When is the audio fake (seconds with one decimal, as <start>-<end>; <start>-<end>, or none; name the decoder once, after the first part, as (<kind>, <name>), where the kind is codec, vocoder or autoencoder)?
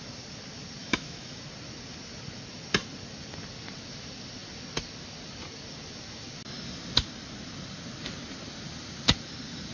0.8-1.4 (autoencoder, DAC-VAE)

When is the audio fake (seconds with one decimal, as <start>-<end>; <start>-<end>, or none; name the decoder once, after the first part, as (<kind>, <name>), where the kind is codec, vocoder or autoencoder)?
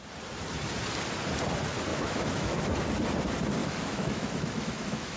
1.9-2.7 (autoencoder, DAC-VAE); 3.6-5.2